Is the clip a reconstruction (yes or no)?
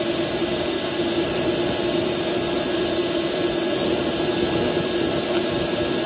no